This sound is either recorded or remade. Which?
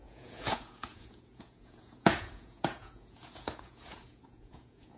remade